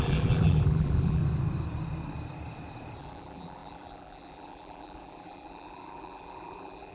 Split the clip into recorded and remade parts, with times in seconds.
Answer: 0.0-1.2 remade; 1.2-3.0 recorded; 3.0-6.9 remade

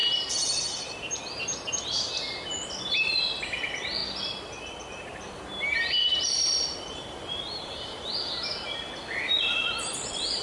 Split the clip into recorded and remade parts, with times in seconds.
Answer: 0.0-1.7 remade; 1.7-6.1 recorded; 6.1-8.1 remade; 8.1-10.4 recorded

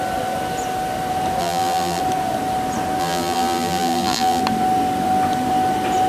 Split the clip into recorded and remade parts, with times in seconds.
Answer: 0.0-1.4 recorded; 1.4-2.0 remade; 2.0-3.0 recorded; 3.0-4.4 remade; 4.4-6.1 recorded

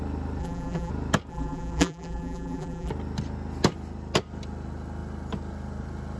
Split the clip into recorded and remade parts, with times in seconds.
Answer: 0.0-0.4 recorded; 0.4-0.9 remade; 0.9-1.3 recorded; 1.3-2.9 remade; 2.9-6.2 recorded

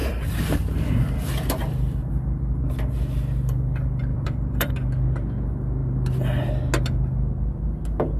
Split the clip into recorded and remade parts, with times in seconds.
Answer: 0.0-2.1 remade; 2.1-4.1 recorded; 4.1-4.7 remade; 4.7-8.2 recorded

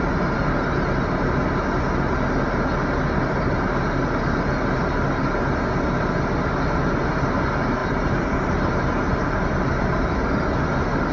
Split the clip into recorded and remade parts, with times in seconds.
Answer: 0.0-7.8 recorded; 7.8-10.4 remade; 10.4-11.1 recorded